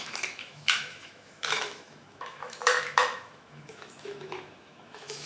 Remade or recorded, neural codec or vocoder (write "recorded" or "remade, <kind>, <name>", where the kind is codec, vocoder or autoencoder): remade, autoencoder, DAC-VAE